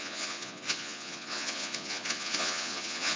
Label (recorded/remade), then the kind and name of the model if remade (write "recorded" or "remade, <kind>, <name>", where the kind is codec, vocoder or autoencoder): remade, vocoder, Vocos